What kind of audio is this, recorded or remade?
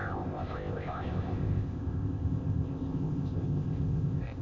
remade